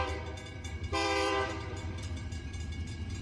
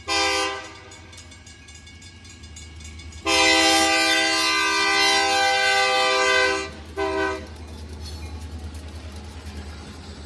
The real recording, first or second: second